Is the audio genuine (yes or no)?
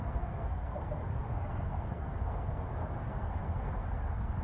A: no